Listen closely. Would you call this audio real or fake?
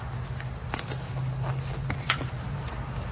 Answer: real